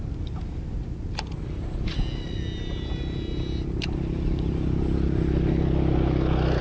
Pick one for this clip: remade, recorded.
recorded